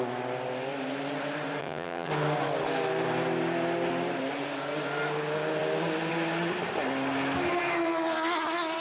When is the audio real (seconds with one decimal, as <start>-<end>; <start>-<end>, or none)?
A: 0.0-1.6; 2.1-8.8